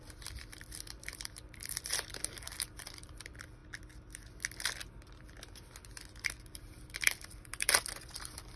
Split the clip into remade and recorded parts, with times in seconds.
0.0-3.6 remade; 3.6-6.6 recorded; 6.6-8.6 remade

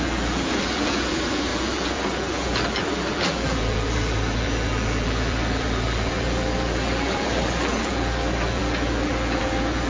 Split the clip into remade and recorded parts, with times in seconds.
0.0-9.9 remade

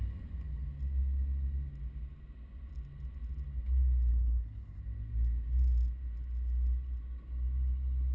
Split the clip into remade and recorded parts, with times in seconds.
0.0-4.1 recorded; 4.1-4.8 remade; 4.8-8.1 recorded

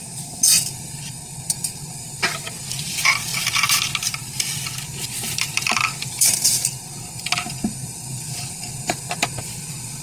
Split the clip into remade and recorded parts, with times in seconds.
0.0-10.0 remade

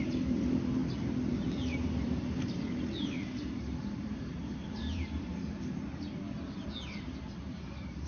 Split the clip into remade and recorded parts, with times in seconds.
0.0-0.8 remade; 0.8-1.3 recorded; 1.3-5.3 remade; 5.3-6.8 recorded; 6.8-8.1 remade

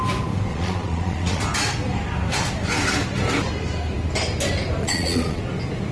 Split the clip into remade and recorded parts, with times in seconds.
0.0-0.5 recorded; 0.5-1.4 remade; 1.4-4.8 recorded; 4.8-5.4 remade; 5.4-5.9 recorded

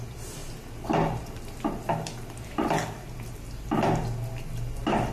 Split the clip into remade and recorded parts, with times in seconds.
0.0-5.1 recorded